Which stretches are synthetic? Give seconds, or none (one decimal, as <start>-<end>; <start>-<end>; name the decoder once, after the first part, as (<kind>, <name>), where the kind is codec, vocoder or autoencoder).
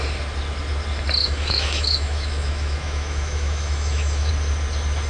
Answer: 1.2-4.3 (autoencoder, DAC-VAE)